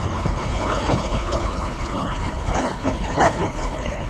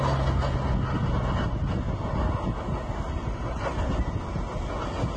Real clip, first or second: second